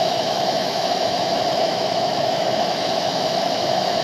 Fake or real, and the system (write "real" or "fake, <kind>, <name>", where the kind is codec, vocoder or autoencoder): fake, autoencoder, DAC-VAE